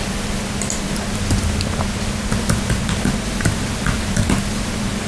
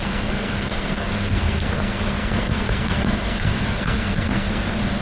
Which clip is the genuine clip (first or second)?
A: first